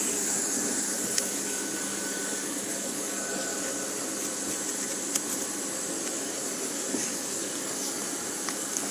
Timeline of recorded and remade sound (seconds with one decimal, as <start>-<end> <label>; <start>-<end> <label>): 0.0-3.5 remade; 3.5-6.2 recorded; 6.2-8.0 remade; 8.0-8.5 recorded; 8.5-8.9 remade